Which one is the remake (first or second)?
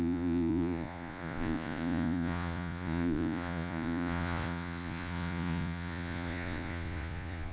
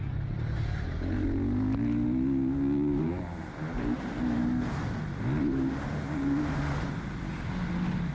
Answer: first